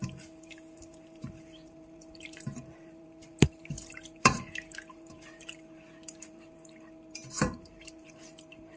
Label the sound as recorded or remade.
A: remade